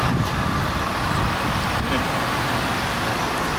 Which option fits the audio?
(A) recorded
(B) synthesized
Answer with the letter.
A